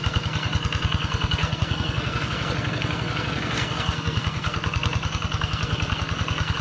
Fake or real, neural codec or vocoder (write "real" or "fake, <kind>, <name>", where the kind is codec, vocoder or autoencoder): fake, codec, SNAC